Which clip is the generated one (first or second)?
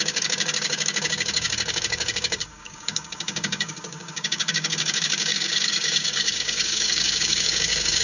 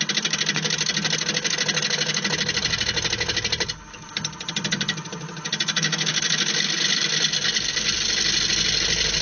first